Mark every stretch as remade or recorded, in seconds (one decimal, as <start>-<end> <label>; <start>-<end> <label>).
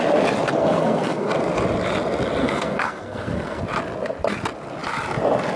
0.0-0.6 recorded; 0.6-1.3 remade; 1.3-2.4 recorded; 2.4-3.6 remade; 3.6-5.6 recorded